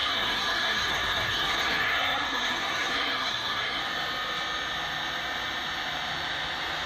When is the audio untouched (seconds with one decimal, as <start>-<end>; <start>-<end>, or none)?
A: 3.8-6.9